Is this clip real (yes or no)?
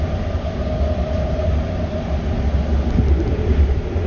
yes